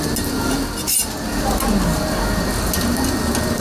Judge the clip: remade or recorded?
recorded